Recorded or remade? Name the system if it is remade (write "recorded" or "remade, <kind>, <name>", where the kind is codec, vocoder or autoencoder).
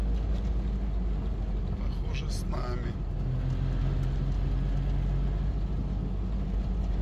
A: recorded